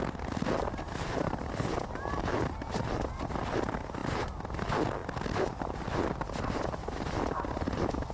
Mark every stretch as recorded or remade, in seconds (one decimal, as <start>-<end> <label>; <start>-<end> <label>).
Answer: 0.0-8.1 recorded